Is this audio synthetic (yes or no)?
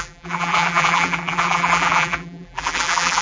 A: yes